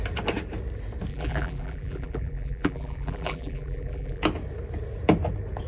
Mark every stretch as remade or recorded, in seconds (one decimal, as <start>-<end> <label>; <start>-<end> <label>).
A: 0.0-1.1 recorded; 1.1-4.2 remade; 4.2-5.7 recorded